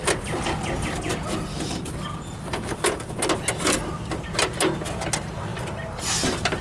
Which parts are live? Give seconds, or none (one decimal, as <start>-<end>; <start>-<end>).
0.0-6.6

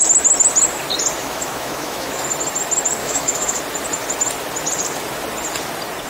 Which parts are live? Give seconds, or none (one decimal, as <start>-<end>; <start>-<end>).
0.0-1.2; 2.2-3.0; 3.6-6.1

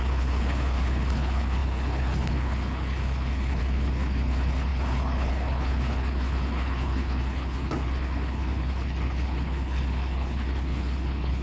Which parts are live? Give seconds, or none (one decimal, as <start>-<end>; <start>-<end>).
none

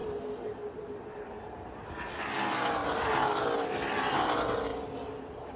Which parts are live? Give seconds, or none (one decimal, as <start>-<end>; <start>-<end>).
2.2-2.8; 3.4-5.6

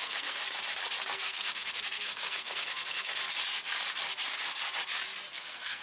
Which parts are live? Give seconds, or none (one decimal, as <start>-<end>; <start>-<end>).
0.4-1.1; 3.1-5.3

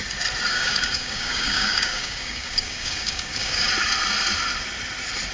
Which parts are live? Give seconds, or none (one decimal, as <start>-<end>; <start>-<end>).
0.0-0.5; 3.7-5.3

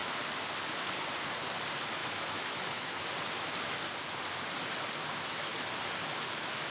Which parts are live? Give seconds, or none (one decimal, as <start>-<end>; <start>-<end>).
0.0-2.0; 3.0-6.7

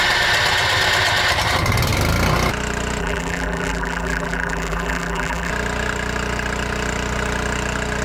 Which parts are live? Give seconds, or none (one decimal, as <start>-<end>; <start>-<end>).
0.0-3.0; 5.5-8.0